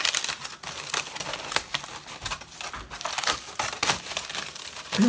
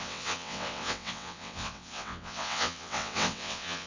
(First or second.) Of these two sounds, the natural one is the first